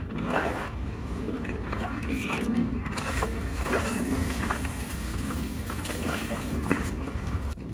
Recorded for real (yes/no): no